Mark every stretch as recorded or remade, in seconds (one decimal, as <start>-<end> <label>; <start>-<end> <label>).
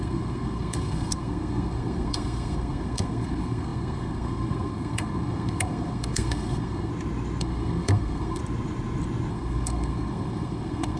0.0-6.9 remade; 6.9-7.4 recorded; 7.4-8.4 remade; 8.4-9.3 recorded; 9.3-11.0 remade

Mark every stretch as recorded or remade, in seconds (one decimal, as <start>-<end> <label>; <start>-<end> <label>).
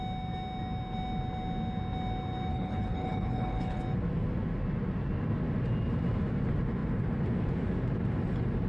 0.0-2.5 recorded; 2.5-3.8 remade; 3.8-8.7 recorded